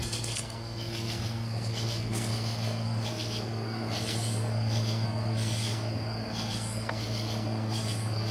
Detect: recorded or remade remade